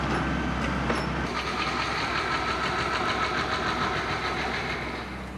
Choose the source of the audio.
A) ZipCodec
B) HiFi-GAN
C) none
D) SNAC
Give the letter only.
C